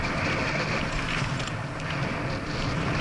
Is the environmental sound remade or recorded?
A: recorded